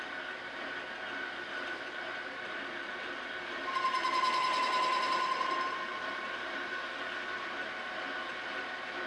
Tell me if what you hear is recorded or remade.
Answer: recorded